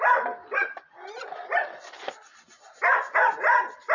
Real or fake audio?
real